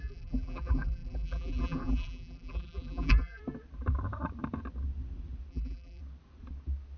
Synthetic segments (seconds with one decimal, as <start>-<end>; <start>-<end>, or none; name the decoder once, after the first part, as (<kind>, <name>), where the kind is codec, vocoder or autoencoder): 0.0-3.4 (vocoder, BigVGAN v2); 5.5-6.0